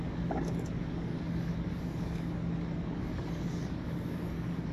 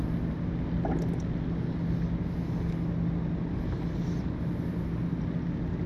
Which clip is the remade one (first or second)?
first